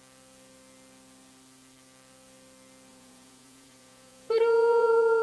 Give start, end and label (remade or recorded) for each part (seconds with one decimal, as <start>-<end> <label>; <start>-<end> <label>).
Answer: 0.0-2.9 recorded; 2.9-5.2 remade